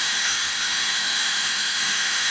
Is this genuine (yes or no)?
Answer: no